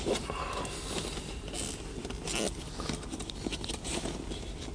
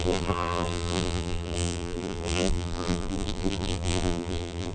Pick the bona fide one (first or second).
first